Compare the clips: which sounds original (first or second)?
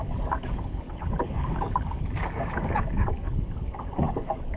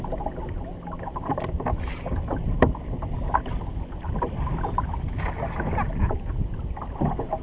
second